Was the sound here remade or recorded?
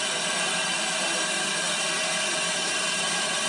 recorded